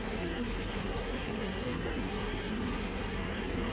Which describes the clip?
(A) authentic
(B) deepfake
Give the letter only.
B